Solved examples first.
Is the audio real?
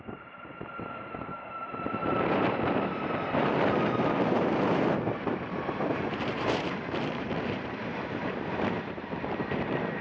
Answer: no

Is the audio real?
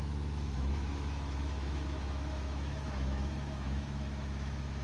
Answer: no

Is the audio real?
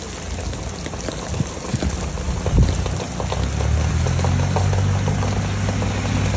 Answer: yes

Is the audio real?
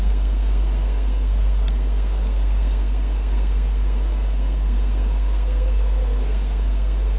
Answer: no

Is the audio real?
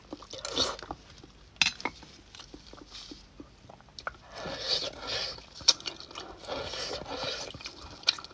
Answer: yes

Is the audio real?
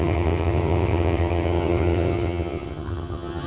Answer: no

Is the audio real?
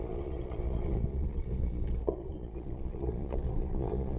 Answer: no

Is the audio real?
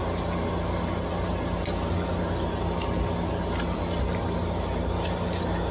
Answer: yes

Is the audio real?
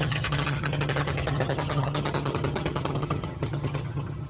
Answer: no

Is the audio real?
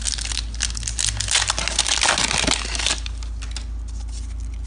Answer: yes